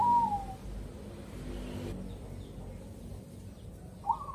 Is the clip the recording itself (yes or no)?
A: yes